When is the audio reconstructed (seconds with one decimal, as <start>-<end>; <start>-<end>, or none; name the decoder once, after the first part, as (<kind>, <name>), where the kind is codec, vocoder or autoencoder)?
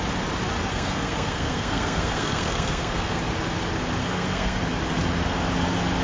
0.7-3.2 (codec, SNAC); 4.0-4.6